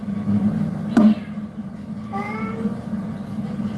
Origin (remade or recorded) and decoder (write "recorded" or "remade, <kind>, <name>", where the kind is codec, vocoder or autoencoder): recorded